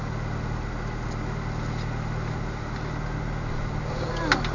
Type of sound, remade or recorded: recorded